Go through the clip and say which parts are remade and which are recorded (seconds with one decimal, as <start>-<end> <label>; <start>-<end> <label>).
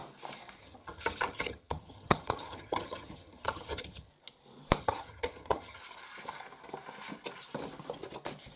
0.0-0.6 recorded; 0.6-4.1 remade; 4.1-4.8 recorded; 4.8-5.8 remade; 5.8-8.6 recorded